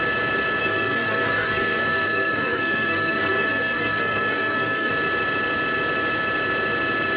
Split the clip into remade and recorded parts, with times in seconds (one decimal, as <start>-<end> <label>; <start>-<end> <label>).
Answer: 0.0-0.6 recorded; 0.6-4.9 remade; 4.9-7.2 recorded